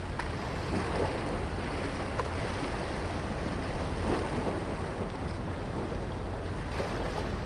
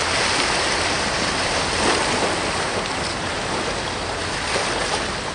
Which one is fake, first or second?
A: second